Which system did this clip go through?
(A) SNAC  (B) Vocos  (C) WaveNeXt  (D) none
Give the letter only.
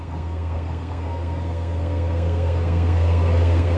A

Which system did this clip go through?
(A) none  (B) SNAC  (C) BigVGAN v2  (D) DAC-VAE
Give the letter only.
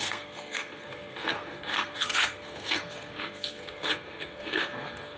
B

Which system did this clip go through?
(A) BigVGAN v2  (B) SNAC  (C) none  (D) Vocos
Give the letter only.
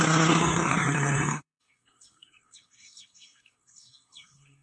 B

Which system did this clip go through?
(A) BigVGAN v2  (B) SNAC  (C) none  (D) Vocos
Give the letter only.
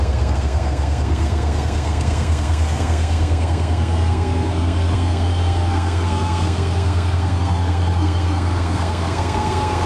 B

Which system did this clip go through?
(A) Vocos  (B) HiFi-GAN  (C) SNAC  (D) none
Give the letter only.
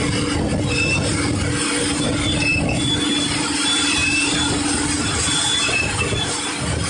D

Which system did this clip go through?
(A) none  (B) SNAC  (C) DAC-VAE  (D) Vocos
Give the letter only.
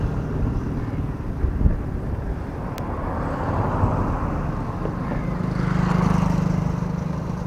A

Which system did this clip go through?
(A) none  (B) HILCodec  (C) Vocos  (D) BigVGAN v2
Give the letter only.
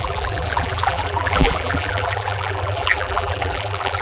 D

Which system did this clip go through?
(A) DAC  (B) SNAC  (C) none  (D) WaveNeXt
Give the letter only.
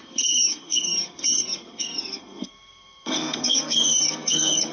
B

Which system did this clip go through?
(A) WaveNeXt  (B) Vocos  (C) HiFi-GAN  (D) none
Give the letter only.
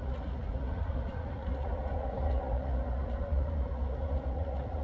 B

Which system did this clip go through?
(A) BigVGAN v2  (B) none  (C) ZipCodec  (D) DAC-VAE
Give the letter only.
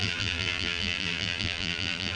A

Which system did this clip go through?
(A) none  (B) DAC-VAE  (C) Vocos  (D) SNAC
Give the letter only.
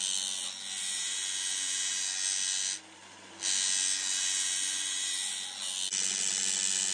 A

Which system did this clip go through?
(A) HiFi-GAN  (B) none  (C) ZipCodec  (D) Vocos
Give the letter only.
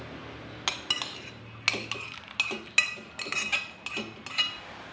B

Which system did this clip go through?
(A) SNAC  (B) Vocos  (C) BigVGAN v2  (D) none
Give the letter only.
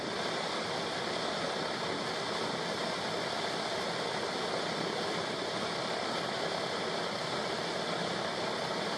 D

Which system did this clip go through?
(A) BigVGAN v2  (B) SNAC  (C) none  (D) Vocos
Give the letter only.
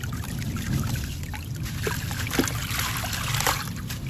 C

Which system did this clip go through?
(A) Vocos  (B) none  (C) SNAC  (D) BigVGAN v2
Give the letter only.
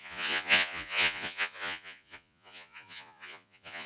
A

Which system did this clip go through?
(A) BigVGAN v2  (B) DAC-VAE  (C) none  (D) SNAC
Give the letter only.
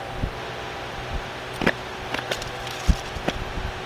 C